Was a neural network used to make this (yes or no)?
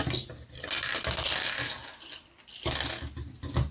no